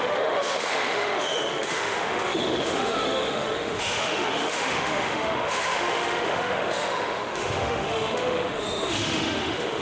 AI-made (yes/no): yes